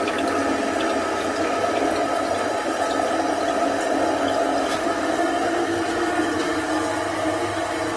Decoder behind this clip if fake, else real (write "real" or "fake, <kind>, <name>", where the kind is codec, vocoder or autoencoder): real